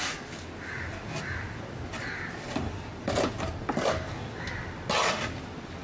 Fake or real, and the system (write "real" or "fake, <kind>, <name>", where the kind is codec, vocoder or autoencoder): real